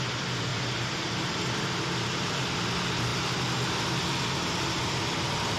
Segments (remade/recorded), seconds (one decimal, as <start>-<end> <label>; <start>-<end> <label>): 0.0-5.6 recorded